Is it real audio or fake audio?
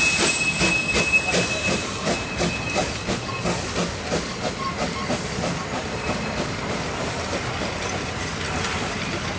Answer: real